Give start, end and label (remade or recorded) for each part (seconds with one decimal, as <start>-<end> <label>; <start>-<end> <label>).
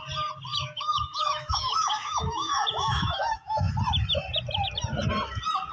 0.0-0.5 recorded; 0.5-3.7 remade; 3.7-5.7 recorded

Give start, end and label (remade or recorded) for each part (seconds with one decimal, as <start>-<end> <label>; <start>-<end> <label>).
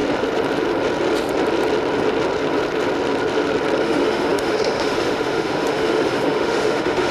0.0-3.8 recorded; 3.8-7.1 remade